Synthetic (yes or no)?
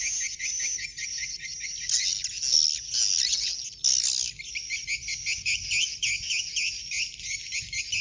no